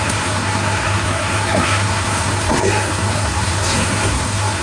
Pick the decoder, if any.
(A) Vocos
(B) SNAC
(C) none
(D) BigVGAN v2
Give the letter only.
B